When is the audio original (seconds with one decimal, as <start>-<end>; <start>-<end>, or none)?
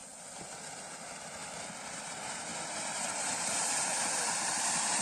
0.0-1.9